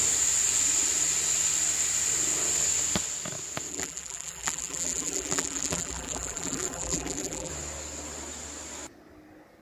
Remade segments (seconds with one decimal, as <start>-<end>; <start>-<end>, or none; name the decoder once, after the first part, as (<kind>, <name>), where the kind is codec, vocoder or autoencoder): 3.7-7.5 (vocoder, BigVGAN v2)